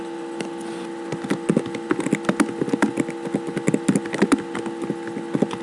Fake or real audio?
real